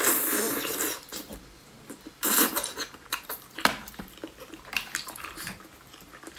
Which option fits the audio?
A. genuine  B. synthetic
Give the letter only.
B